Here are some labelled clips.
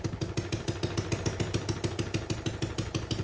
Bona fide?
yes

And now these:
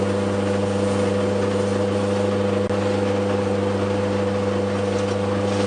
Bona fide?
yes